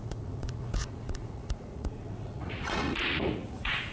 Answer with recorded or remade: remade